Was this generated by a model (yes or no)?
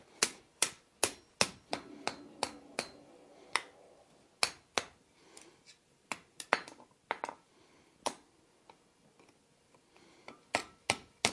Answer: no